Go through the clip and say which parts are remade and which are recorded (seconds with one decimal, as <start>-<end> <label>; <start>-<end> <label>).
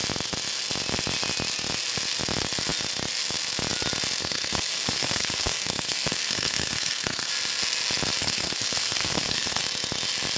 0.0-4.2 recorded; 4.2-7.3 remade; 7.3-8.2 recorded; 8.2-9.6 remade; 9.6-10.4 recorded